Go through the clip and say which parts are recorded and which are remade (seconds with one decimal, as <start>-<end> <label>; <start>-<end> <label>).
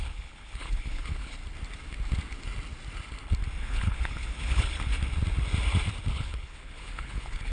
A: 0.0-1.4 remade; 1.4-3.6 recorded; 3.6-4.9 remade; 4.9-6.1 recorded; 6.1-7.5 remade